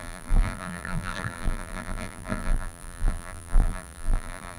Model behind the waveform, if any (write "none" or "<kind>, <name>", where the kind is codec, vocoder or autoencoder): vocoder, BigVGAN v2